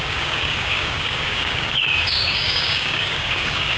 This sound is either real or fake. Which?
fake